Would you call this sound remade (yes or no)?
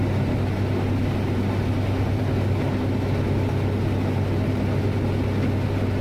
no